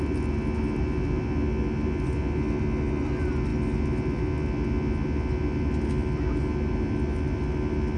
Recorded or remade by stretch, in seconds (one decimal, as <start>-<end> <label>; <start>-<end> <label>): 0.0-8.0 recorded